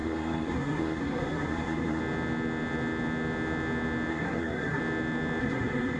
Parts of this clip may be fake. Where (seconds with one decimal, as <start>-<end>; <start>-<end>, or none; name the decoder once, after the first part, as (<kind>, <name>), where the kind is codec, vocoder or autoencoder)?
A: 0.0-2.0 (codec, SNAC); 4.1-4.8; 5.4-6.0